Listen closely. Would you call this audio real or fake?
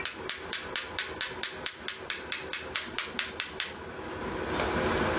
real